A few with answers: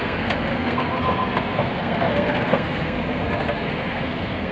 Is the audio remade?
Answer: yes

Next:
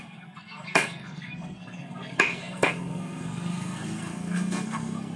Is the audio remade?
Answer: yes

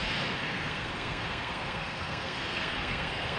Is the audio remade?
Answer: yes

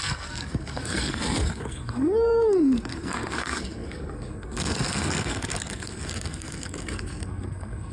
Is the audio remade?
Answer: yes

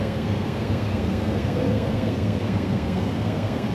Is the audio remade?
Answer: yes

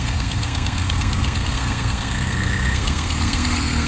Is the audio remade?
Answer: yes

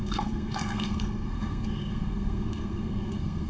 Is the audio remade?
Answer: yes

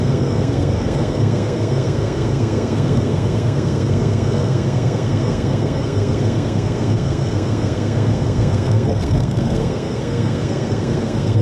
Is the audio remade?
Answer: yes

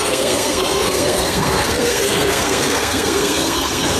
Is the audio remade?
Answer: yes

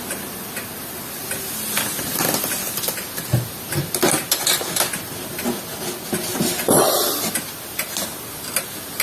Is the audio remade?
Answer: no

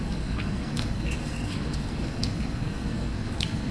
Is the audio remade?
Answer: yes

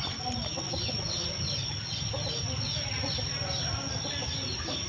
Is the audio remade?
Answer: no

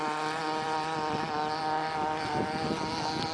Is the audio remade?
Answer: no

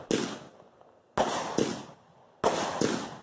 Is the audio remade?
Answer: no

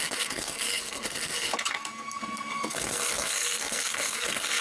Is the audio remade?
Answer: yes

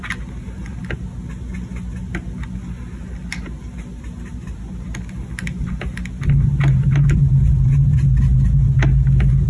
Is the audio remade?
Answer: no